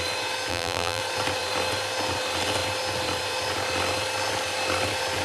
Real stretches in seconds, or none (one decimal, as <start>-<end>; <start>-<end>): 0.0-0.5; 1.0-5.2